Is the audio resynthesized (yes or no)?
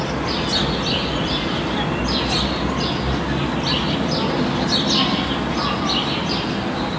no